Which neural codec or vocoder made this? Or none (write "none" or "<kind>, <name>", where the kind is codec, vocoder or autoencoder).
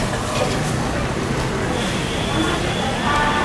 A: none